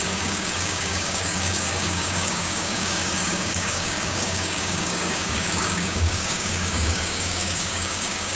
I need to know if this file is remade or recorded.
remade